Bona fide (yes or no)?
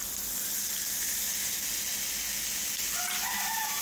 yes